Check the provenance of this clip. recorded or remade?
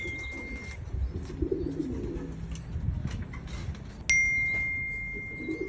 recorded